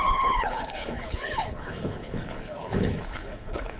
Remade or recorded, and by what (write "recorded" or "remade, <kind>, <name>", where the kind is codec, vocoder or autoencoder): remade, codec, HILCodec